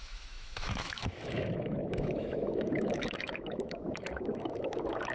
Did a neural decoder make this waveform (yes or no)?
yes